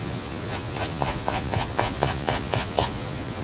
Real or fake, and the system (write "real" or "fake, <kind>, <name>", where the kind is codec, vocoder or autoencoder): fake, vocoder, Vocos